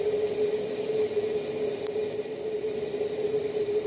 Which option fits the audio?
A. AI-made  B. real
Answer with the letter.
B